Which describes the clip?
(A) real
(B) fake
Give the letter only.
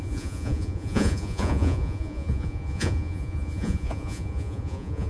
B